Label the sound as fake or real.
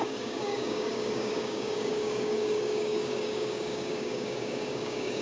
fake